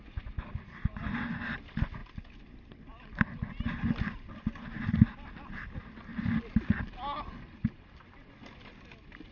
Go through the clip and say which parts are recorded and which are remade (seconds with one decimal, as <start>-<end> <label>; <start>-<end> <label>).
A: 0.0-9.3 recorded